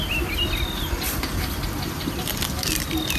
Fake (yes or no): no